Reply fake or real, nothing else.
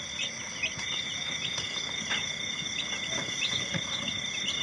real